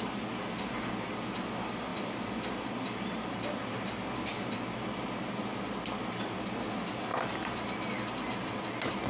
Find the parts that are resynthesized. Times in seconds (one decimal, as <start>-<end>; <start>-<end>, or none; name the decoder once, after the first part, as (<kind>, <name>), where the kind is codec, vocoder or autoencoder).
1.9-2.6 (vocoder, BigVGAN v2); 7.1-7.9